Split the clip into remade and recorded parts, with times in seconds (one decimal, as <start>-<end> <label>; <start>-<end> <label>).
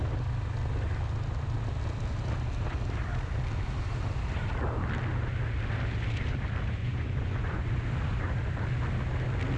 0.0-6.8 recorded; 6.8-7.8 remade; 7.8-9.6 recorded